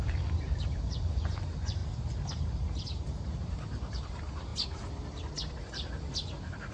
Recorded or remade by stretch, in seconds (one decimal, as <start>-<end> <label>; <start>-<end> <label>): 0.0-1.8 remade; 1.8-2.8 recorded; 2.8-4.5 remade; 4.5-5.5 recorded; 5.5-6.7 remade